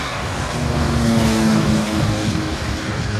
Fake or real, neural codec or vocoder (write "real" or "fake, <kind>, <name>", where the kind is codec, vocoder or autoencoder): fake, codec, DAC